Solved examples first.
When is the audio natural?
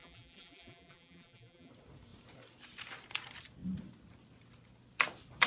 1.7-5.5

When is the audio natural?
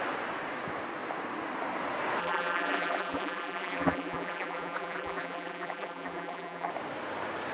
0.0-2.2; 6.7-7.5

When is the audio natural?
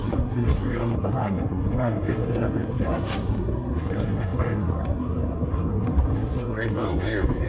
none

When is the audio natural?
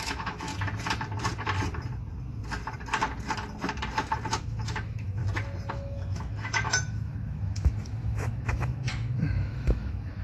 0.5-4.4; 5.2-5.7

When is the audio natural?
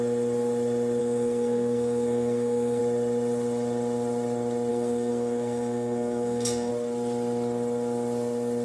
0.0-1.0; 2.8-4.7; 6.7-8.6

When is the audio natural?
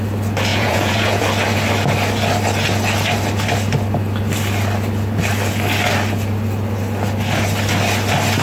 0.0-0.5; 1.2-8.4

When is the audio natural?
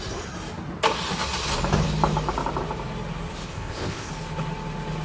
0.0-3.5; 4.1-5.0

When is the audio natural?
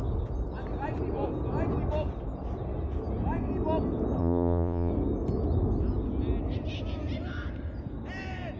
0.0-4.2; 4.9-8.6